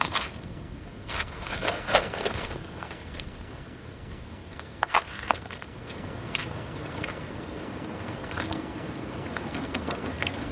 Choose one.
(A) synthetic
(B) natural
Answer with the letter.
A